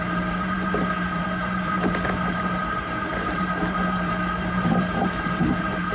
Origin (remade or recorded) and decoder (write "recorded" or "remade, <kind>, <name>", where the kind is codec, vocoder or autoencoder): remade, vocoder, BigVGAN v2